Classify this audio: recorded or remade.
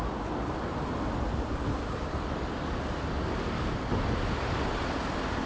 recorded